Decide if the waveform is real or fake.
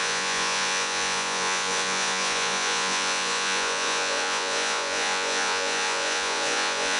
fake